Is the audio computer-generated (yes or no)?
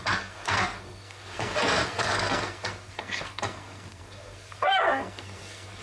yes